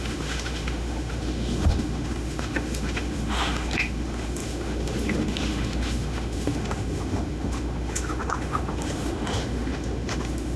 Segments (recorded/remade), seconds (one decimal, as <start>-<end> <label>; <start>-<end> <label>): 0.0-10.6 remade